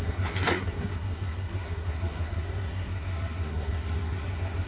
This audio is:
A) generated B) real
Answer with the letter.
A